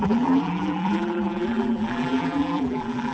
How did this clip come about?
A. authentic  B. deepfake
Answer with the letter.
B